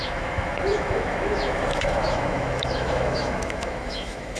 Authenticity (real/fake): fake